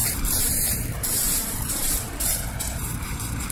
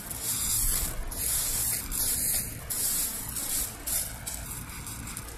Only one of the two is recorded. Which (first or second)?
second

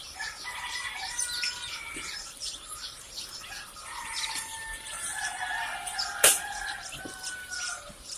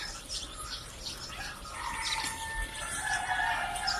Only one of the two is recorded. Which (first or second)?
second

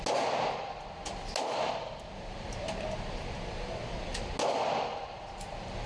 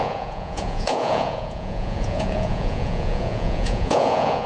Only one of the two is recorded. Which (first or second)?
first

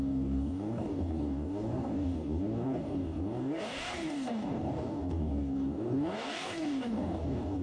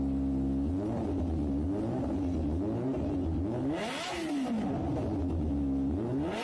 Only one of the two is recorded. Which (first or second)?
second